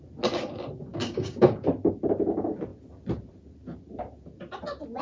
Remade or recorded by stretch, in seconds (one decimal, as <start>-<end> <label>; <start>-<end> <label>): 0.0-0.9 recorded; 0.9-1.6 remade; 1.6-5.0 recorded